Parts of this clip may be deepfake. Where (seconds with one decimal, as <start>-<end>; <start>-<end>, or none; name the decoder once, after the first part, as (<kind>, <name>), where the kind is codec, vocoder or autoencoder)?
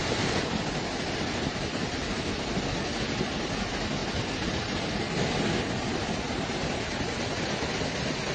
none